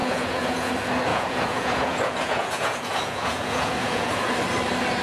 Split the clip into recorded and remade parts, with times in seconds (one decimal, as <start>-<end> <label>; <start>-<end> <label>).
0.0-0.7 remade; 0.7-1.1 recorded; 1.1-4.1 remade; 4.1-5.0 recorded